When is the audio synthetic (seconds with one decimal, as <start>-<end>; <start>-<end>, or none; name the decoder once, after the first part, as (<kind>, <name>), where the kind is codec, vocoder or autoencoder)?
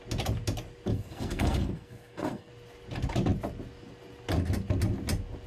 0.9-2.5 (codec, SNAC)